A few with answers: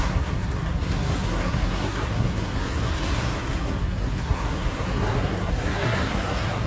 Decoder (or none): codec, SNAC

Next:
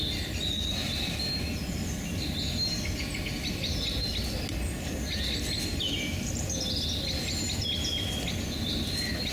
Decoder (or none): none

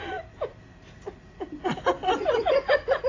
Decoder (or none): vocoder, BigVGAN v2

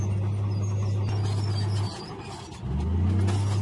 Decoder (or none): none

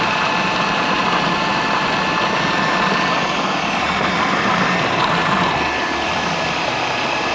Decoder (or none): none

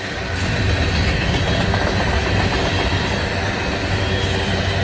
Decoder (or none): none